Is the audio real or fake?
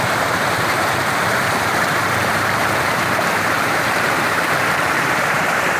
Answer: fake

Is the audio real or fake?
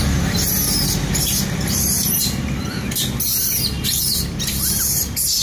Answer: real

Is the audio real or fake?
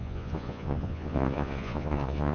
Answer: fake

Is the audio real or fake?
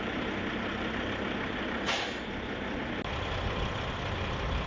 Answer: real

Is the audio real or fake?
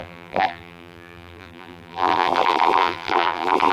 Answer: fake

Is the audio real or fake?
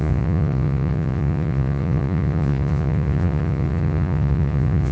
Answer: fake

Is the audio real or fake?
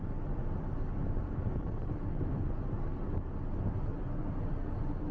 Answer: real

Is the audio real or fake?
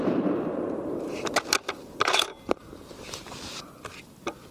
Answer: fake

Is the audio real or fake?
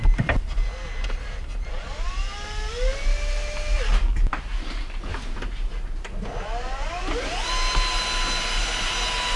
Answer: real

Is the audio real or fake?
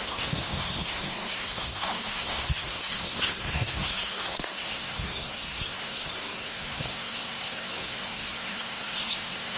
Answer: fake